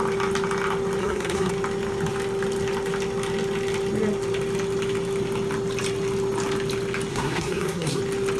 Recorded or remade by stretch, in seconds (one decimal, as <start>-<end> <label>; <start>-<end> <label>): 0.0-1.0 recorded; 1.0-1.5 remade; 1.5-7.1 recorded; 7.1-8.0 remade; 8.0-8.4 recorded